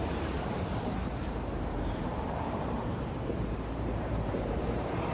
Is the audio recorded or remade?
remade